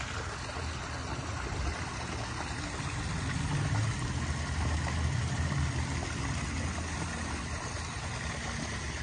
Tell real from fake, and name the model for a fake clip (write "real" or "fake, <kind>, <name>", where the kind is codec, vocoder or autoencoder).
real